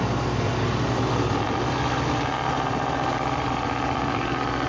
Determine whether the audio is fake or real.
real